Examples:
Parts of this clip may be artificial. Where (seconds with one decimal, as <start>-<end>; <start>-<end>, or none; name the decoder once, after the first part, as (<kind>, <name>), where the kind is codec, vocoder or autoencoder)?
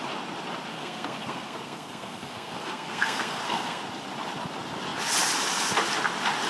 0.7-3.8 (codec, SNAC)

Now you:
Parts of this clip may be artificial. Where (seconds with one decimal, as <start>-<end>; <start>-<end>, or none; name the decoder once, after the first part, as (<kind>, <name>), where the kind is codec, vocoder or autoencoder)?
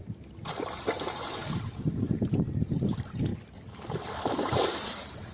0.8-3.3 (vocoder, BigVGAN v2); 3.9-5.3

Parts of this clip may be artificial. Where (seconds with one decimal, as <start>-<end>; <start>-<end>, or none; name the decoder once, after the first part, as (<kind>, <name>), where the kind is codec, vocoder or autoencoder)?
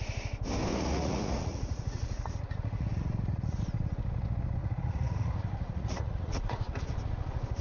0.7-3.6 (vocoder, Vocos); 4.6-6.8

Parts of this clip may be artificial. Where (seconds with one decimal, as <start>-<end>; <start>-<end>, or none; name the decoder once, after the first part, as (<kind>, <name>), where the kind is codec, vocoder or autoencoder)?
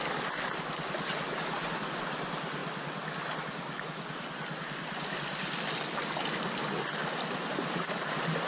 none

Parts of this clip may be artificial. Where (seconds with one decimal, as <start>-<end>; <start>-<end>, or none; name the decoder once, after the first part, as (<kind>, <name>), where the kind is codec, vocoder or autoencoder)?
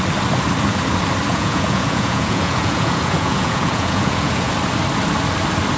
1.3-4.5 (vocoder, Vocos)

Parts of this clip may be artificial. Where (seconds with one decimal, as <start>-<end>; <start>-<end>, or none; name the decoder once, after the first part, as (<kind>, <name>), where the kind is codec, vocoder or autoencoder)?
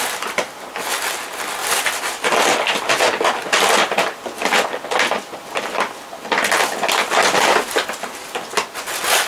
1.6-2.3 (vocoder, BigVGAN v2)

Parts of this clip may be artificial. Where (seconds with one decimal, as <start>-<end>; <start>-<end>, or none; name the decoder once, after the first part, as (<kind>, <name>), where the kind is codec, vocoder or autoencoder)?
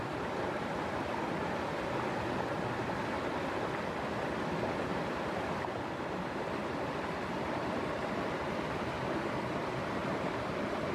4.9-5.5 (vocoder, BigVGAN v2); 10.0-10.5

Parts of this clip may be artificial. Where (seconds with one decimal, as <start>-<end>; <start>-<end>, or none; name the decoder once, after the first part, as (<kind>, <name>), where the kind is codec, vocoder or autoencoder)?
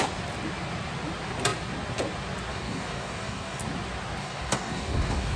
2.5-3.6 (codec, DAC); 4.2-5.4